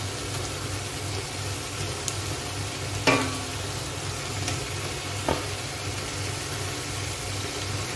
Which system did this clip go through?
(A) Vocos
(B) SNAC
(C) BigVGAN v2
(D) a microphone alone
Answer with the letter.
D